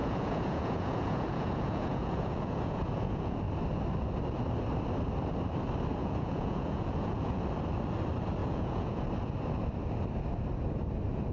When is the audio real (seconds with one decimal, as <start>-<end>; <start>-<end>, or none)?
3.4-6.0; 7.4-8.4; 9.0-11.3